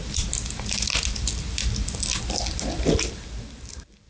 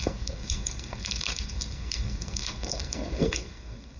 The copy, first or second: second